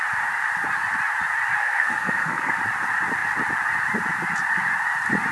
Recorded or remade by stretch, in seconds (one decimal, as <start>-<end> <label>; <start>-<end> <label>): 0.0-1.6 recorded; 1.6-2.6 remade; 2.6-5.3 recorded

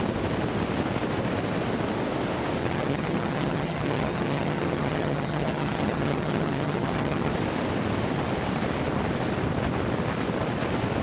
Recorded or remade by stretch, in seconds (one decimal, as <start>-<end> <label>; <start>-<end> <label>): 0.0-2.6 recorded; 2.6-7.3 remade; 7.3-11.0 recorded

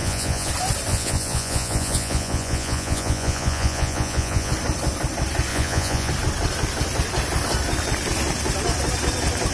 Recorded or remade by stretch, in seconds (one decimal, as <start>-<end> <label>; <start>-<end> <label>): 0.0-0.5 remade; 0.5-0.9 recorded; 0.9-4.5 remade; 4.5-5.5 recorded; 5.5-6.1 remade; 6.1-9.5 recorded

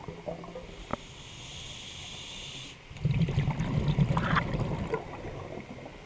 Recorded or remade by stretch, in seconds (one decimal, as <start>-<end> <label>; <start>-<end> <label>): 0.0-6.1 recorded